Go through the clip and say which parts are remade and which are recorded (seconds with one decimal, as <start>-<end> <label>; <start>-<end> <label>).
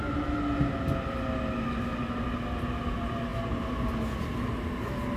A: 0.0-5.2 recorded